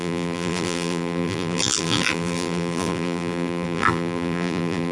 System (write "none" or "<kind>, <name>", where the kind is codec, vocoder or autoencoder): vocoder, BigVGAN v2